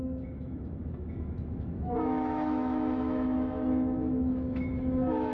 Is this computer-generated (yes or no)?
yes